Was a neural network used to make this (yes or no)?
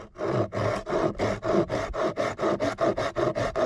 no